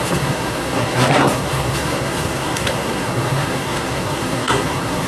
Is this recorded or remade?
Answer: remade